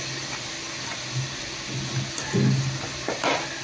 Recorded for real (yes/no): yes